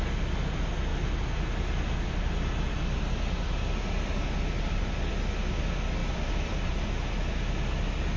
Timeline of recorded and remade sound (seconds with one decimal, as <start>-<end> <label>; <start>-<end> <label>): 0.0-6.0 recorded; 6.0-6.7 remade; 6.7-8.2 recorded